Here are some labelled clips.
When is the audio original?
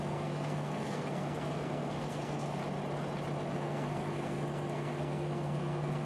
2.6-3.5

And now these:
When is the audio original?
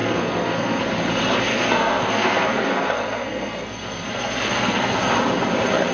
0.8-1.5; 5.0-5.9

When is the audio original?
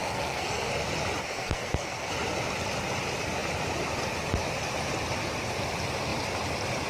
0.7-1.2; 2.1-6.9